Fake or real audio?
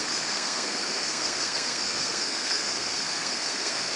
fake